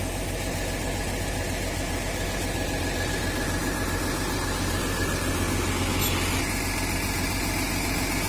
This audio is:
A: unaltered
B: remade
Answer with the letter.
A